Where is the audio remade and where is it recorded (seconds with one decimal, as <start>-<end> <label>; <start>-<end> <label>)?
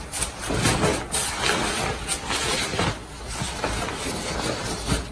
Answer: 0.0-5.1 recorded